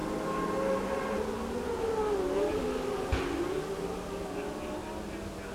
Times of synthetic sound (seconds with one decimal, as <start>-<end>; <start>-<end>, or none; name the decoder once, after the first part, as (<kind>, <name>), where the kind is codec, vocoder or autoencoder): none

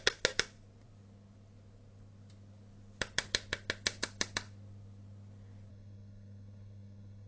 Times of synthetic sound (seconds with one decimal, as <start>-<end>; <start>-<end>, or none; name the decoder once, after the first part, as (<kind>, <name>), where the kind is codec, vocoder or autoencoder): 5.7-7.3 (codec, SNAC)